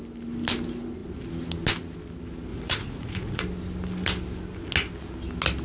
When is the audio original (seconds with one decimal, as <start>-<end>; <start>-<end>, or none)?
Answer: 0.0-2.5; 3.4-5.6